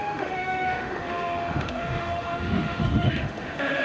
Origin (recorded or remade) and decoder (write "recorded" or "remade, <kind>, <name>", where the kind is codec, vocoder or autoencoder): remade, autoencoder, DAC-VAE